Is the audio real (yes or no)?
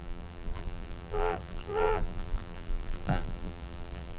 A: no